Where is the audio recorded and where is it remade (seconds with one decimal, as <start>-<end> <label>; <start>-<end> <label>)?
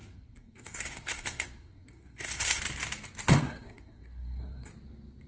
0.0-2.6 remade; 2.6-3.3 recorded; 3.3-4.7 remade; 4.7-5.3 recorded